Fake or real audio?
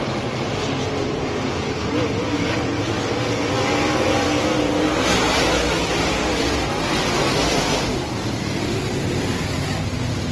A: real